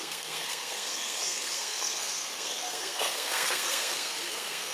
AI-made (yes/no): yes